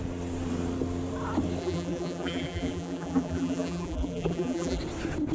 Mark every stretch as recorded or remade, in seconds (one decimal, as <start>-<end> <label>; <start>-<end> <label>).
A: 0.0-1.6 recorded; 1.6-4.8 remade; 4.8-5.3 recorded